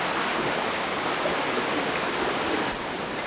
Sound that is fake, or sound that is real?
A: real